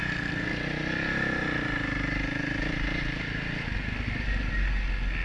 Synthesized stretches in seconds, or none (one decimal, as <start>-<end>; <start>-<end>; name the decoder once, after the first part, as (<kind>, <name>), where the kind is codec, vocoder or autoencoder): none